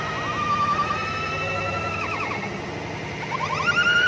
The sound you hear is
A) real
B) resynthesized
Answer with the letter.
A